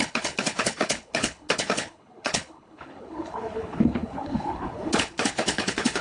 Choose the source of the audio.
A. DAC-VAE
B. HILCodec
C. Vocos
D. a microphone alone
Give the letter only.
B